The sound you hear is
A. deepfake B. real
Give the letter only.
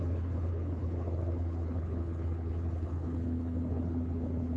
A